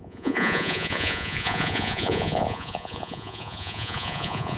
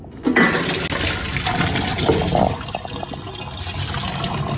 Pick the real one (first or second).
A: second